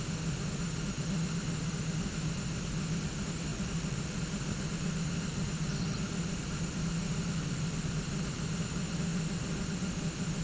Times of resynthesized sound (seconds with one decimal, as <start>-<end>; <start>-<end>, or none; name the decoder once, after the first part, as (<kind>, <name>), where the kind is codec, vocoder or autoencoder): 3.5-7.8 (vocoder, BigVGAN v2)